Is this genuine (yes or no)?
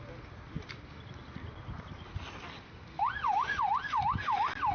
yes